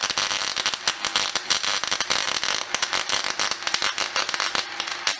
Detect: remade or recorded recorded